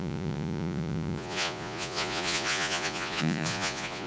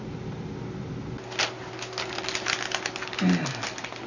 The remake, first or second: first